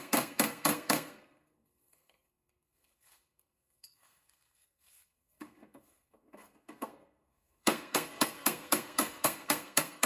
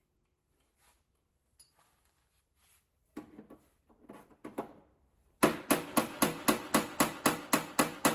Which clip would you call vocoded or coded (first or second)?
first